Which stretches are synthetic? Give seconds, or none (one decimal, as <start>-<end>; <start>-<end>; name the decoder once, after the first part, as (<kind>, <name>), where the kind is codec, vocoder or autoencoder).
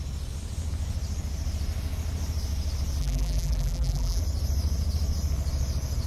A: 3.0-4.2 (vocoder, BigVGAN v2)